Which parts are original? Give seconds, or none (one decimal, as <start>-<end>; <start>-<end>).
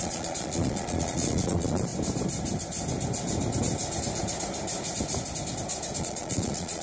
1.9-6.0